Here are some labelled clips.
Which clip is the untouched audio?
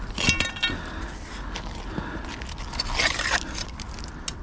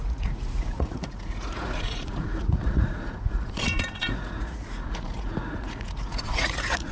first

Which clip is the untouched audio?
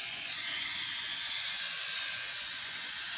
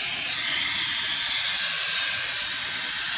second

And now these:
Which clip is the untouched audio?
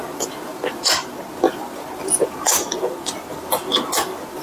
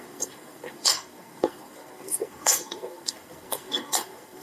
first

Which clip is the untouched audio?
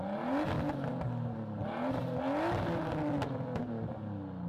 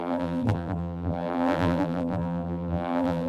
first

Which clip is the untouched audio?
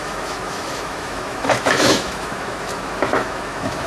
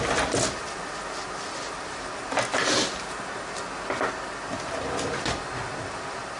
second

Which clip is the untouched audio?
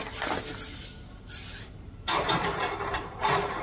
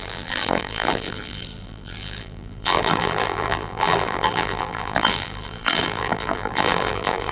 first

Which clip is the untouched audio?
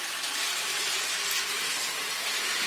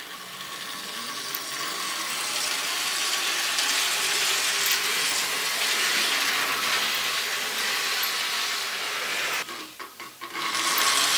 second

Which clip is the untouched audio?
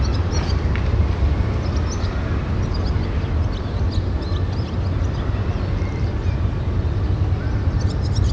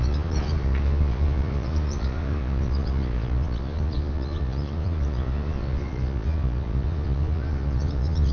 first